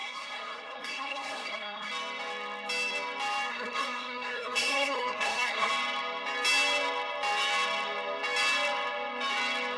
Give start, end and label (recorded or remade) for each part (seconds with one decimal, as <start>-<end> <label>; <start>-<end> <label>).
0.0-1.9 remade; 1.9-3.5 recorded; 3.5-5.7 remade; 5.7-9.8 recorded